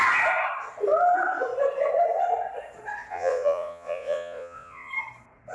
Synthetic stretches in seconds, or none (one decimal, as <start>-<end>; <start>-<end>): 3.1-4.9